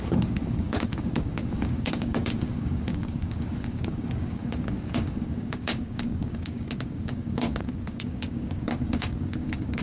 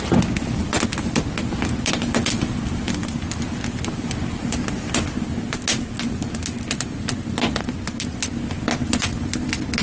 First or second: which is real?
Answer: second